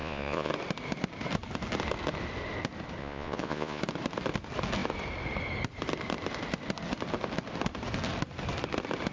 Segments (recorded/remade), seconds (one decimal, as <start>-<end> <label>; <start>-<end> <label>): 0.0-0.5 remade; 0.5-3.0 recorded; 3.0-3.8 remade; 3.8-9.1 recorded